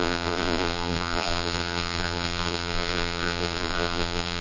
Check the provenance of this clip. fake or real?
fake